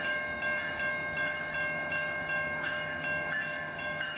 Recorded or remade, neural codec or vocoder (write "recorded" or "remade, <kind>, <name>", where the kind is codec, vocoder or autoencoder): remade, autoencoder, DAC-VAE